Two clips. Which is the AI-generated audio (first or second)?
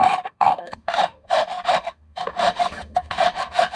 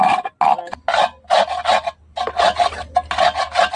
first